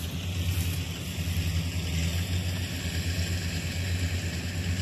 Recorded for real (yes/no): yes